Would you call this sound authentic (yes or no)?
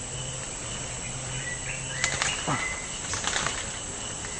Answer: yes